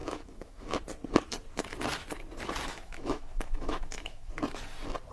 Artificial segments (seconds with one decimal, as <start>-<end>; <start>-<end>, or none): 0.0-0.8; 2.7-4.3